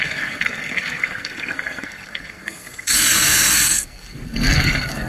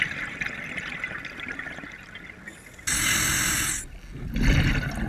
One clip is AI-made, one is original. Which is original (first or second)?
second